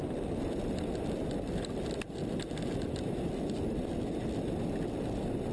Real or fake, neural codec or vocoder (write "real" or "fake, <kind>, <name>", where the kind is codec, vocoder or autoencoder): real